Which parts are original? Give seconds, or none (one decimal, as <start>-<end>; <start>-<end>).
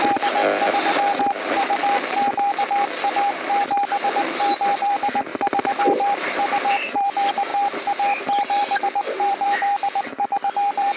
0.4-1.3; 1.8-4.4; 7.5-8.2